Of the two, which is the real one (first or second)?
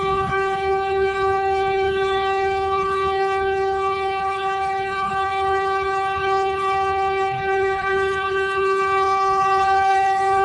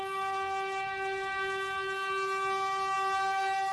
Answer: second